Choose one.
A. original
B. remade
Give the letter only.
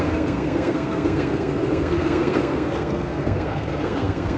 B